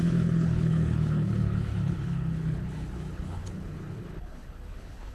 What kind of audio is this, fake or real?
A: fake